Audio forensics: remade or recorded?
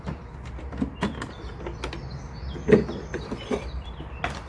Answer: recorded